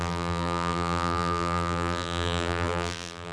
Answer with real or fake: fake